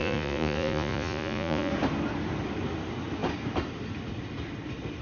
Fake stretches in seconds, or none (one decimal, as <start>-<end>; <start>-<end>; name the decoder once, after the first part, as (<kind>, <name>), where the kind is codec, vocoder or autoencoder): 0.0-1.7 (vocoder, Vocos)